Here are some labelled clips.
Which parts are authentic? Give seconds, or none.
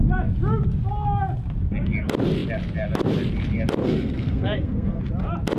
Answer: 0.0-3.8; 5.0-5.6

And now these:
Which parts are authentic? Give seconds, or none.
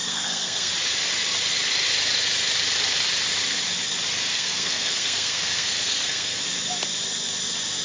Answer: 0.7-4.3; 6.4-7.8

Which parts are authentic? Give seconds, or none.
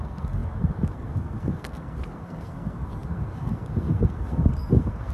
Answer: none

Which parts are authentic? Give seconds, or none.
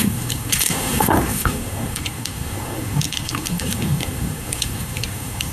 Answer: none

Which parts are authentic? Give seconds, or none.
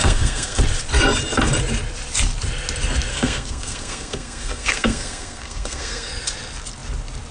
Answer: 0.6-3.1; 6.1-7.3